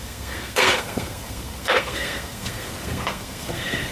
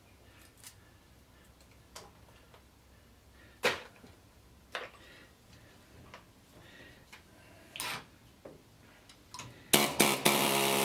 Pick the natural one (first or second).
second